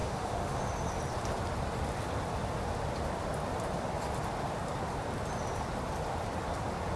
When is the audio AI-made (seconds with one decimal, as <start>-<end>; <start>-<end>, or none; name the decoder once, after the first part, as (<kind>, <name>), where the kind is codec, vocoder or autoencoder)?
0.0-0.6 (autoencoder, DAC-VAE)